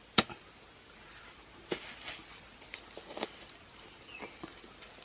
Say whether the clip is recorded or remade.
recorded